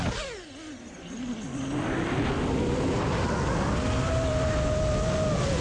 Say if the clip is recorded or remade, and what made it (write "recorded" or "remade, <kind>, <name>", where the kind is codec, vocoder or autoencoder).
recorded